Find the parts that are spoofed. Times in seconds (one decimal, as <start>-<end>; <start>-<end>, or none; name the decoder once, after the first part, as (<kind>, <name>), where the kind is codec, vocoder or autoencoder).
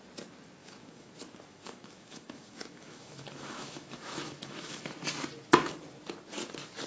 0.6-1.1 (autoencoder, DAC-VAE); 1.5-4.9